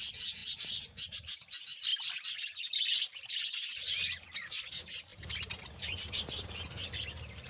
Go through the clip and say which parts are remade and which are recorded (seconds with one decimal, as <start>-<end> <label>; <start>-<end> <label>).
0.0-0.4 recorded; 0.4-1.3 remade; 1.3-7.5 recorded